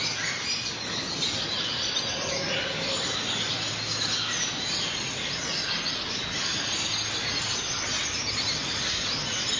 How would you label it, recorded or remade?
recorded